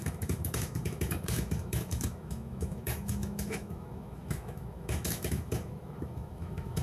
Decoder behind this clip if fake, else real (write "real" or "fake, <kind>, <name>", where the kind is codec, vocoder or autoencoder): fake, autoencoder, DAC-VAE